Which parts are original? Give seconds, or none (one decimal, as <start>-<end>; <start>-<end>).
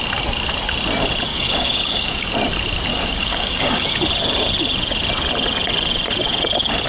0.0-1.3; 2.3-2.9; 3.9-6.9